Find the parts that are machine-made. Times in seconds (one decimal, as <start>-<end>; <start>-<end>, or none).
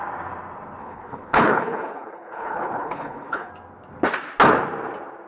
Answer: 0.8-3.5